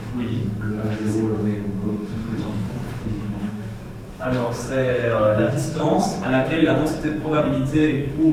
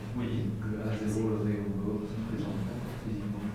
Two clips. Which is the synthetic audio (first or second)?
first